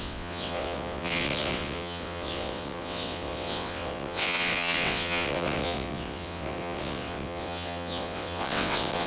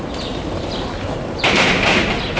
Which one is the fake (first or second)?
first